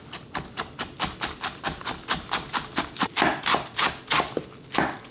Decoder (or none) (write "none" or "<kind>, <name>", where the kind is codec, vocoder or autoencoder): none